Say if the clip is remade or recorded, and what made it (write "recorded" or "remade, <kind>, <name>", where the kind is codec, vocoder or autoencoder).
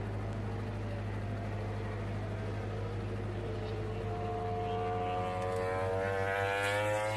recorded